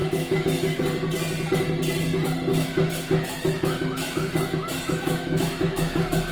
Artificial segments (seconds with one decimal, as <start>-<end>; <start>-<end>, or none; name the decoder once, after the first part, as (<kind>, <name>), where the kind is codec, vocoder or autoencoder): 0.0-0.8 (autoencoder, DAC-VAE); 2.5-6.3